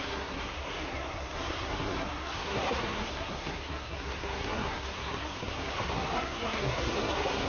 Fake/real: fake